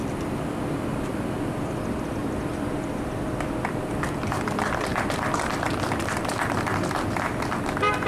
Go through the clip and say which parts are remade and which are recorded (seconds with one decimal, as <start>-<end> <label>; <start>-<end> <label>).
0.0-1.1 remade; 1.1-2.2 recorded; 2.2-2.9 remade; 2.9-4.9 recorded; 4.9-5.7 remade; 5.7-8.1 recorded